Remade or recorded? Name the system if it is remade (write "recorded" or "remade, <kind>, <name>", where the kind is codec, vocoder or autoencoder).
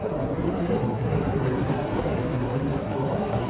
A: remade, codec, SNAC